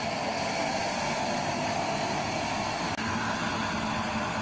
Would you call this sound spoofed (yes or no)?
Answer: no